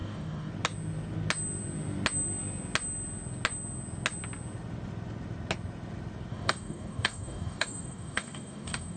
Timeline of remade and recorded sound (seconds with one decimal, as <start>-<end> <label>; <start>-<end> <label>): 0.0-0.5 remade; 0.5-6.3 recorded; 6.3-9.0 remade